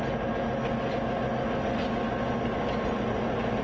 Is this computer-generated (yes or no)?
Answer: no